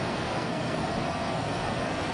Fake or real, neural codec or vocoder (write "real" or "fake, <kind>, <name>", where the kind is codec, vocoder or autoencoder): fake, codec, SNAC